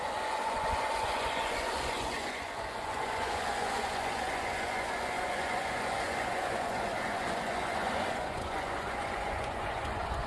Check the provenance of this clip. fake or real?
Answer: fake